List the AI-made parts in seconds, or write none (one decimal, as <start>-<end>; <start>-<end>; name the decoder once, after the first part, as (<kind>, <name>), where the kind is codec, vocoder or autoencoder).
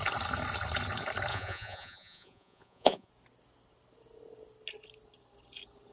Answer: 1.3-3.1 (vocoder, Vocos)